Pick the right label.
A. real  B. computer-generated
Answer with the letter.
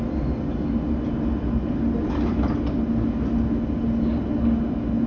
A